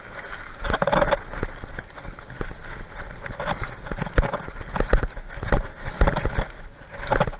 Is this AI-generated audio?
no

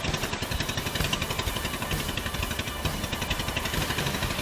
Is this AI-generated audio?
yes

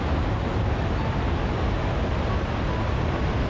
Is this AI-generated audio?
no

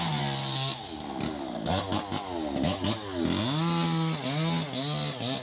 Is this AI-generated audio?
no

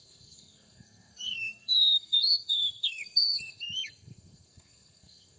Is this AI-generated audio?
yes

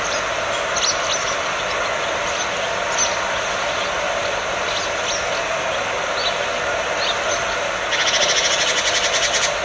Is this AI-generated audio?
no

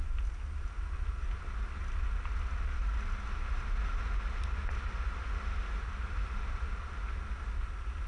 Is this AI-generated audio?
no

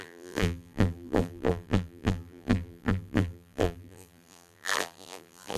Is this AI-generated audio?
yes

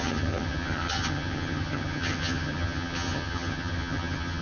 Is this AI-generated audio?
yes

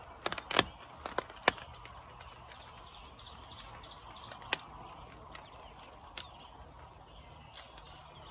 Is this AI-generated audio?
no